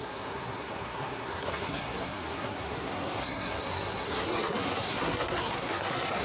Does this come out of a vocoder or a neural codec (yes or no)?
yes